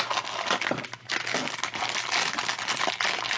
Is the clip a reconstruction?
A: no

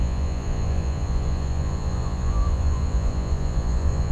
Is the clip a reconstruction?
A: yes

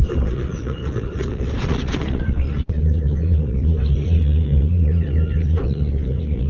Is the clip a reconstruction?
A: yes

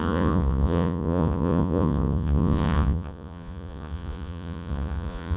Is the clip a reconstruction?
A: yes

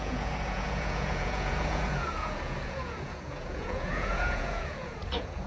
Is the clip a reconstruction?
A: yes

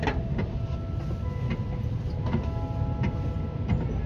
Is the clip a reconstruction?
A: no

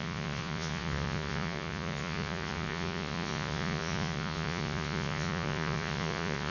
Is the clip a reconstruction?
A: yes